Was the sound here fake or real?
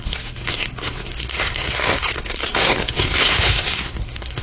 fake